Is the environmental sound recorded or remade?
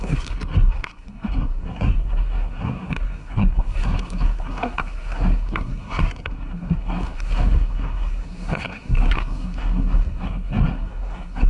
remade